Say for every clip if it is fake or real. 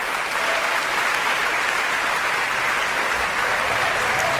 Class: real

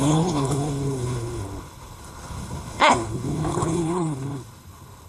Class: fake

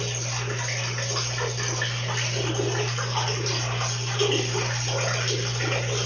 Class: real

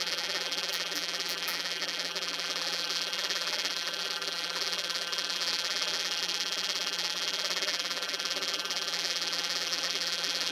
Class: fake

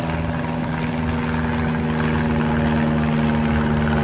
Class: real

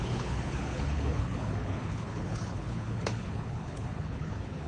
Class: fake